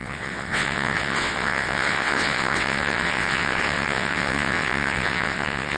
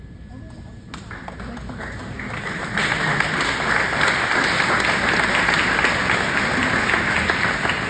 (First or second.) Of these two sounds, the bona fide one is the second